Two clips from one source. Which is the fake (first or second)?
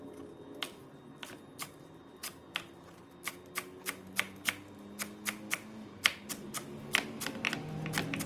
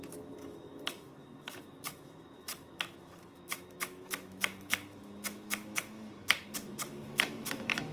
second